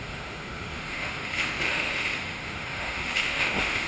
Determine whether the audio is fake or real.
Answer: fake